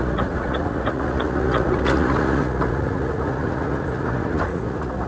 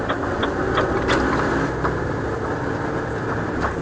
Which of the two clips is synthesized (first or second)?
first